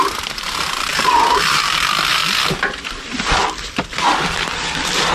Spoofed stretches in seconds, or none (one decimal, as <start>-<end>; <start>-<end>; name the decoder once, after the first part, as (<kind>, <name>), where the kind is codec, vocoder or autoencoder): 0.0-5.1 (vocoder, BigVGAN v2)